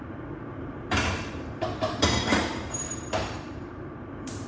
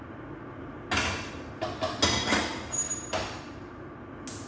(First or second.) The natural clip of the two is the second